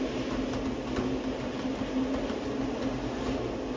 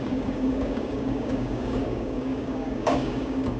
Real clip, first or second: first